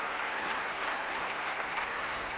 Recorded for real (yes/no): no